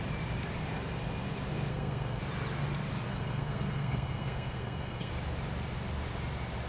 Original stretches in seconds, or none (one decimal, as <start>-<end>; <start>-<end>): 0.0-1.7; 2.2-3.1; 5.1-6.7